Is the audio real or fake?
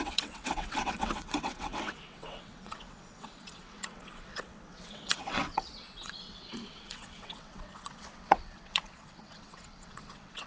fake